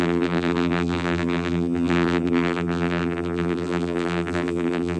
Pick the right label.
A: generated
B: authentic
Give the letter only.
A